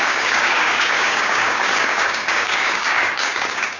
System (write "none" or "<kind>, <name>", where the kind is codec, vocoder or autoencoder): codec, DAC